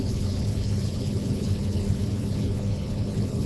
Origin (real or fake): fake